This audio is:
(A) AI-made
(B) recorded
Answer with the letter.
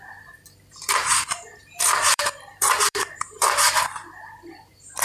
A